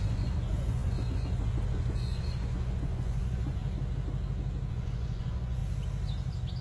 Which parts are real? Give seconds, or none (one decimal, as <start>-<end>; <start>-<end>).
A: 3.6-4.7; 5.6-6.6